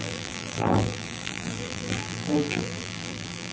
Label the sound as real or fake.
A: fake